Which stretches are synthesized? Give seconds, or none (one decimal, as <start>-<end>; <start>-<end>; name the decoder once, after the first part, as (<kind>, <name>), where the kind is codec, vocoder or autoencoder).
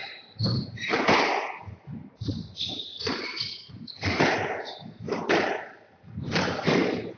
0.0-1.4 (vocoder, BigVGAN v2); 2.9-3.7